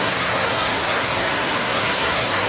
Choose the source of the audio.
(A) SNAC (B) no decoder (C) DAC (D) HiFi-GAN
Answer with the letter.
A